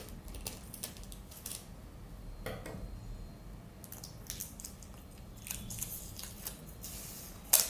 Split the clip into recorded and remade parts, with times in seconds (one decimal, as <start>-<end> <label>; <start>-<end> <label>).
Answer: 0.0-4.4 recorded; 4.4-6.4 remade; 6.4-7.7 recorded